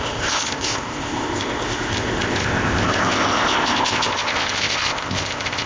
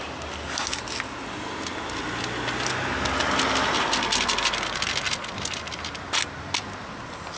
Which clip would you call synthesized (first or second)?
first